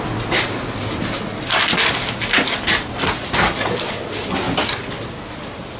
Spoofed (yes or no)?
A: no